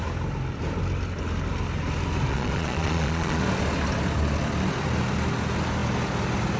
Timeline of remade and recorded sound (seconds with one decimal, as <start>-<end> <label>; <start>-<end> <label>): 0.0-2.3 recorded; 2.3-3.4 remade; 3.4-6.6 recorded